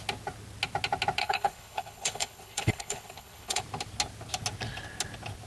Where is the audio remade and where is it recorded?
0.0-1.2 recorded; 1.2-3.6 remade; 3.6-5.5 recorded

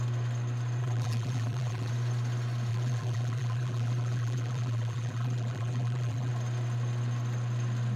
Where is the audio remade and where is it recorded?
0.0-0.8 recorded; 0.8-1.9 remade; 1.9-2.7 recorded; 2.7-6.3 remade; 6.3-8.0 recorded

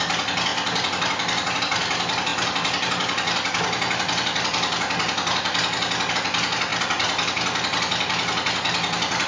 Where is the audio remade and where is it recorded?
0.0-9.3 recorded

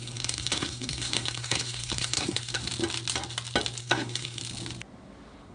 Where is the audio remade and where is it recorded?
0.0-2.6 remade; 2.6-3.8 recorded; 3.8-4.4 remade; 4.4-5.5 recorded

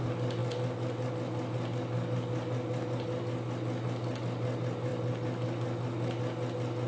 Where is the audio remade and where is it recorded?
0.0-6.9 recorded